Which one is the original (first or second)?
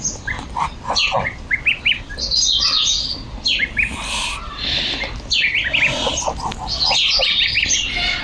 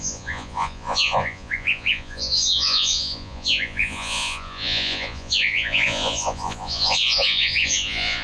first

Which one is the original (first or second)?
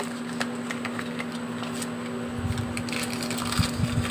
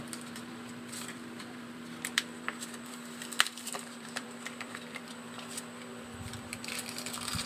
first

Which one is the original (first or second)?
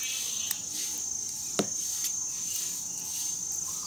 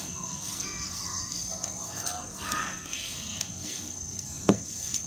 first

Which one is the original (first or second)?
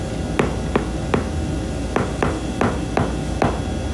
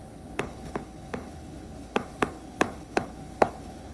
first